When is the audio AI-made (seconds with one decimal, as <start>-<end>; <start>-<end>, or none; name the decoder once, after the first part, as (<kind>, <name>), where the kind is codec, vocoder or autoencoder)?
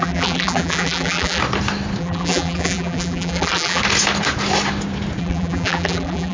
0.0-1.4 (vocoder, BigVGAN v2); 2.0-3.8; 5.2-6.3